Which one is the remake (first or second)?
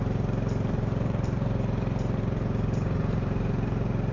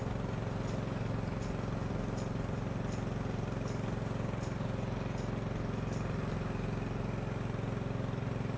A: first